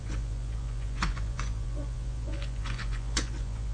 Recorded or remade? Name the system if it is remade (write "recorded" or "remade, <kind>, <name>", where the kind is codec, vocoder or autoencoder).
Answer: remade, vocoder, Vocos